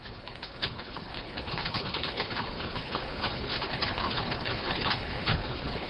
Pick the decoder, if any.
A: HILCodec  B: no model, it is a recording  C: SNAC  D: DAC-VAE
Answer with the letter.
A